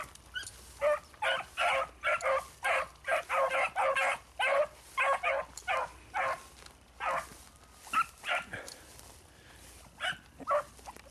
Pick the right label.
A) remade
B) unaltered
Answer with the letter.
B